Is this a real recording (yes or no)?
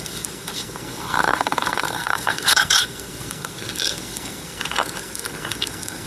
no